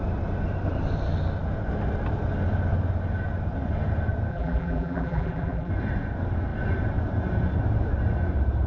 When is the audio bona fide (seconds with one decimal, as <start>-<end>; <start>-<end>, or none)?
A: 0.0-4.3; 5.7-8.7

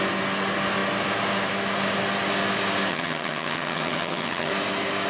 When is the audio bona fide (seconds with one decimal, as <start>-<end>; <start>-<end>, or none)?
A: 0.0-2.9; 4.5-5.1

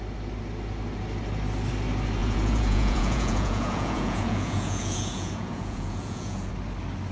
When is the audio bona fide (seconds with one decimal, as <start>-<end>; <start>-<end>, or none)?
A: 0.0-2.2; 6.5-7.1